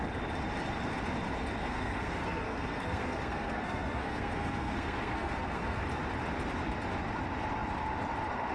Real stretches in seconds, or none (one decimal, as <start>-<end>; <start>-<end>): 0.0-1.6; 5.8-8.5